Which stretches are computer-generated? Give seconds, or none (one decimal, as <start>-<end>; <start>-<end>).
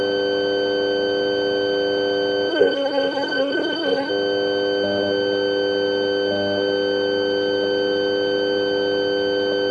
2.5-4.1